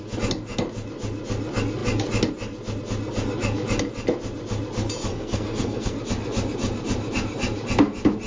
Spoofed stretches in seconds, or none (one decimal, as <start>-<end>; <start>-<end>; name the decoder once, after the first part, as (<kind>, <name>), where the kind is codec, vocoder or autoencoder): 5.1-6.0 (codec, SNAC)

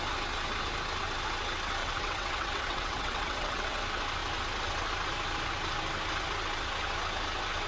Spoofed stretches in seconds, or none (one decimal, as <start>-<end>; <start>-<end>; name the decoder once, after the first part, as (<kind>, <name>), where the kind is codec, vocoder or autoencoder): 1.8-3.8 (vocoder, WaveNeXt)

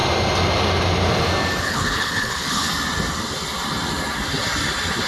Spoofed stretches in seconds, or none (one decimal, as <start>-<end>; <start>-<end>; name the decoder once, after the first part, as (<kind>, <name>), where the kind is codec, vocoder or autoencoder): 1.6-2.7 (codec, HILCodec)

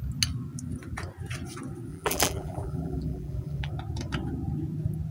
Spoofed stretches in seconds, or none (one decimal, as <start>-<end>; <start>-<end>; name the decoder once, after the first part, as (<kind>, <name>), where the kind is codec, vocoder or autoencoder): 1.9-3.7 (vocoder, BigVGAN v2)

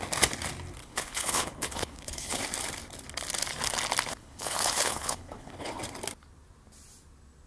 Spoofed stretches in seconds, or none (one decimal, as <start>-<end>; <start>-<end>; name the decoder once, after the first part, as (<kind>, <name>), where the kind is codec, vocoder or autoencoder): 0.8-2.4 (codec, HILCodec); 4.2-5.8

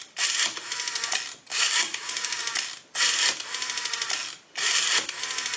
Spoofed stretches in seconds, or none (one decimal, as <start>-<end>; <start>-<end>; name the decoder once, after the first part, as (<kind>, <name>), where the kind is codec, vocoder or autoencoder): 1.5-2.4 (codec, DAC)

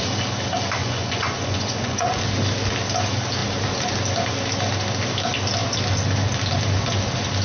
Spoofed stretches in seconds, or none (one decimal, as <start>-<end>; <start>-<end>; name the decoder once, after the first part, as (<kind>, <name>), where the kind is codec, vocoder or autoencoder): 0.8-2.2 (vocoder, Vocos)